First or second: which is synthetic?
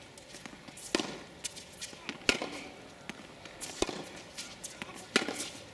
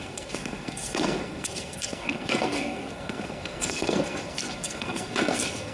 second